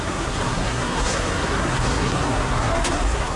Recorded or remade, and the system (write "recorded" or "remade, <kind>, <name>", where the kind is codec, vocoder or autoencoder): remade, codec, SNAC